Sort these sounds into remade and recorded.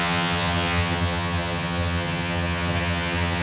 remade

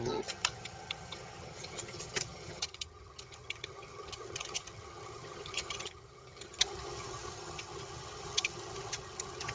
remade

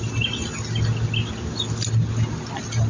recorded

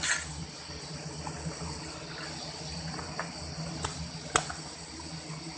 recorded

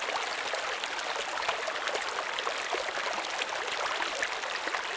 recorded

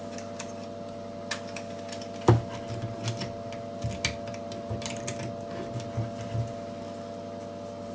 recorded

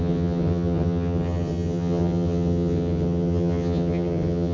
remade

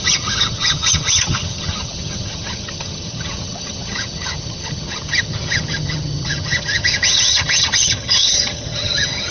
remade